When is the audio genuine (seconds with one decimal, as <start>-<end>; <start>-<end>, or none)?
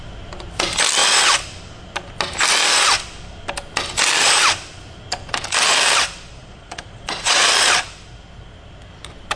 0.0-6.4; 7.5-9.4